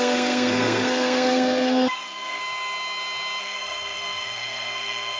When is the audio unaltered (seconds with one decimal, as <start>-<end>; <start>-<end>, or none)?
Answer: 2.4-3.4